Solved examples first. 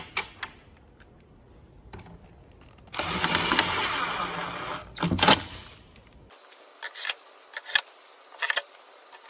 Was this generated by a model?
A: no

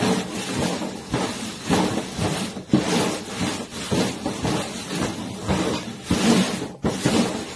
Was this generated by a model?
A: no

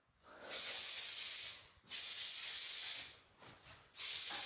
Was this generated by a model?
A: yes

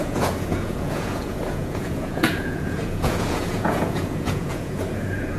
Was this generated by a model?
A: yes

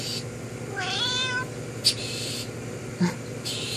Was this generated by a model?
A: no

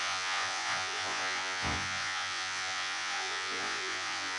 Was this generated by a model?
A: yes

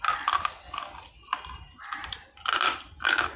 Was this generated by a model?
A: no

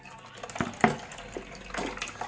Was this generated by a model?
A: no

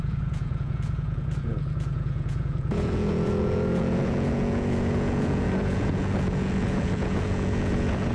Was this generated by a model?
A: yes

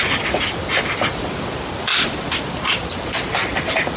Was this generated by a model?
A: no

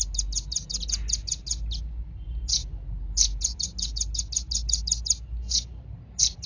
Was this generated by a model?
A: no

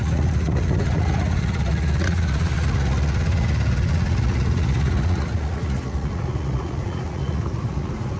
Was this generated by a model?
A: yes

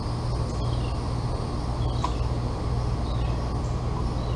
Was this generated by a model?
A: no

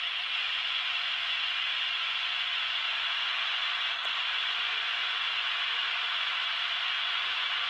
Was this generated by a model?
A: yes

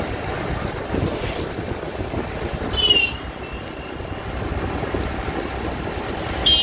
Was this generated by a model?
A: no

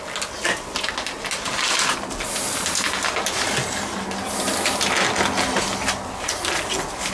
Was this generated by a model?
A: no